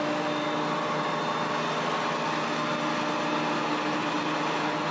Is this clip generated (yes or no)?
no